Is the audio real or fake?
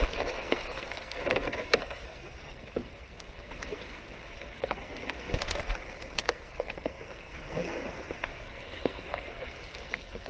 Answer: fake